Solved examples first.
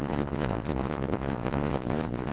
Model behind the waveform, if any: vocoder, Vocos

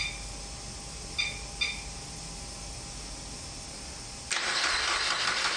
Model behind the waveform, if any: none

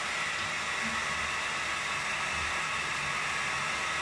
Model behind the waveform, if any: none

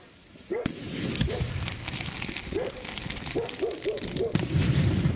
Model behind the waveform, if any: vocoder, BigVGAN v2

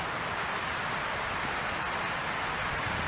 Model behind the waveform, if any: none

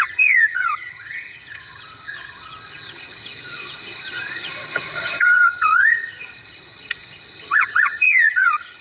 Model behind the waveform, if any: vocoder, HiFi-GAN